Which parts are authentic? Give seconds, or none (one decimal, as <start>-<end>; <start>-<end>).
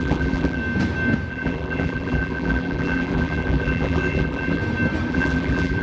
0.6-1.3; 4.6-5.1